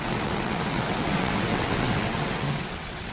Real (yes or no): no